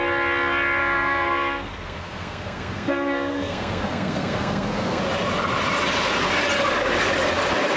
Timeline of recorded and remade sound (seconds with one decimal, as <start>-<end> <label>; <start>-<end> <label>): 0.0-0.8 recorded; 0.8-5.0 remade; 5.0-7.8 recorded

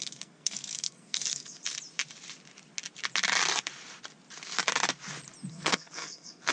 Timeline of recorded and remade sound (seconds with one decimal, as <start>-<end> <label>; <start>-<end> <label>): 0.0-1.6 remade; 1.6-5.5 recorded; 5.5-6.5 remade

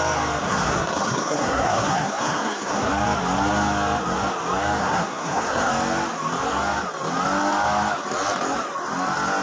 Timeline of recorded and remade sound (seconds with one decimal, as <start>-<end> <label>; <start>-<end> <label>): 0.0-0.4 recorded; 0.4-2.9 remade; 2.9-4.8 recorded; 4.8-5.7 remade; 5.7-9.4 recorded

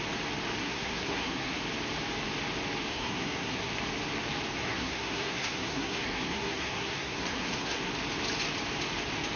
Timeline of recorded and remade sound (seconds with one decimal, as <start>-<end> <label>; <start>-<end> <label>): 0.0-0.6 recorded; 0.6-1.6 remade; 1.6-2.9 recorded; 2.9-3.7 remade; 3.7-4.6 recorded; 4.6-7.9 remade; 7.9-9.4 recorded

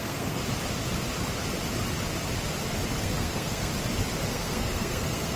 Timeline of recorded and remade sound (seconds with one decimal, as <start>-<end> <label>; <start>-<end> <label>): 0.0-0.4 remade; 0.4-3.0 recorded; 3.0-3.7 remade; 3.7-4.3 recorded; 4.3-5.4 remade

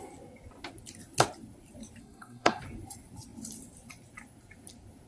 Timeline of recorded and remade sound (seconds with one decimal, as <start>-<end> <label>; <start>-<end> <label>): 0.0-2.0 recorded; 2.0-2.6 remade; 2.6-5.1 recorded